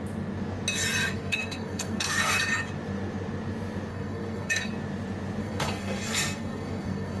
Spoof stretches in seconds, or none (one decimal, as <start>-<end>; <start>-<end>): 1.0-2.4; 3.9-4.7; 5.4-7.2